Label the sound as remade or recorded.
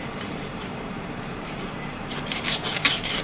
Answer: remade